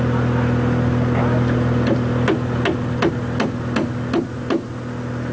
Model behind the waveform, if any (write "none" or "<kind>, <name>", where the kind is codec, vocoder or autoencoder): none